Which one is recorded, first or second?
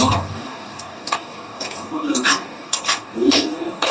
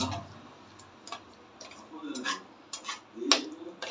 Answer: second